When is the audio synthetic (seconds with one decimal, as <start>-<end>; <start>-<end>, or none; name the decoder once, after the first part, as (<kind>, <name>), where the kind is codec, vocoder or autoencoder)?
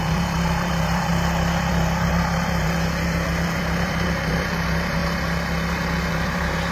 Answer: 0.0-1.1 (vocoder, BigVGAN v2); 1.7-5.0; 6.1-6.7